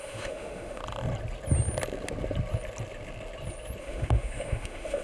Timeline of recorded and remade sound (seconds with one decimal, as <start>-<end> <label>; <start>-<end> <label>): 0.0-0.8 remade; 0.8-3.8 recorded; 3.8-5.0 remade